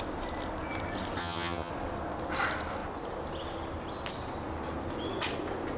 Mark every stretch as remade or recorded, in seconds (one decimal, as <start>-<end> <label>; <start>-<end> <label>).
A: 0.0-1.2 recorded; 1.2-1.7 remade; 1.7-5.8 recorded

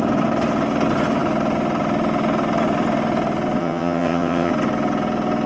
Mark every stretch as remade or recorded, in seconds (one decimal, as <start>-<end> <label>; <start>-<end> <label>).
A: 0.0-3.6 recorded; 3.6-4.5 remade; 4.5-5.5 recorded

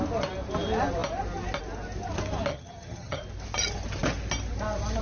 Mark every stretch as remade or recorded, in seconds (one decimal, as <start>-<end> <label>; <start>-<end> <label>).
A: 0.0-2.5 recorded; 2.5-3.2 remade; 3.2-5.0 recorded

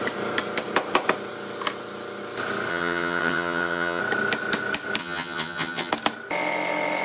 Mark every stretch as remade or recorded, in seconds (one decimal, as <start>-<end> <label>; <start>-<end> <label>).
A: 0.0-2.7 recorded; 2.7-4.0 remade; 4.0-5.0 recorded; 5.0-5.9 remade; 5.9-7.0 recorded

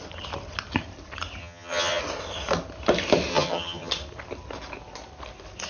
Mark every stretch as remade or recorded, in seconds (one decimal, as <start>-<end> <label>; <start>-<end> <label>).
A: 0.0-1.4 recorded; 1.4-2.0 remade; 2.0-3.3 recorded; 3.3-3.9 remade; 3.9-5.7 recorded

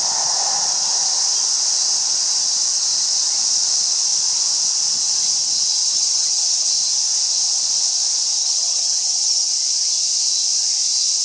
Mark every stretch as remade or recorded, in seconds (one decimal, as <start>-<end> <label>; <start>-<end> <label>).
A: 0.0-5.8 recorded; 5.8-6.7 remade; 6.7-8.4 recorded; 8.4-9.5 remade; 9.5-11.2 recorded

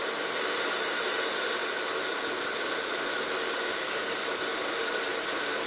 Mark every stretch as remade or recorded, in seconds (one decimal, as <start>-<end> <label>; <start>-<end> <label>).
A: 0.0-5.7 recorded